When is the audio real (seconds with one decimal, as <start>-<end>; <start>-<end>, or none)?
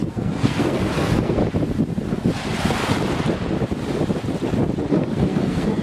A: 1.4-4.9